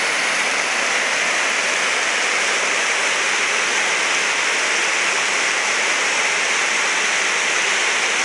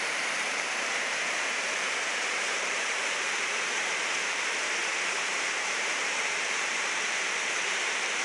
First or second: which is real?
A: first